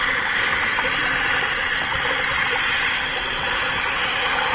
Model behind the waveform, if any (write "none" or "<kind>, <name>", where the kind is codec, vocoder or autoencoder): vocoder, BigVGAN v2